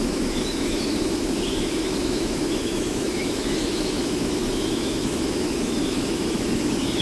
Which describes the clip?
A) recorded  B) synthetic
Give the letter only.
B